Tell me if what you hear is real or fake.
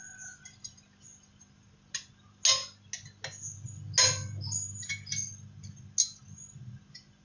real